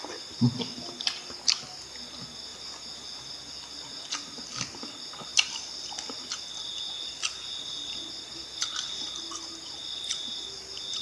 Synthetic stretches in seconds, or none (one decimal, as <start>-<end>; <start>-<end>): 5.3-5.9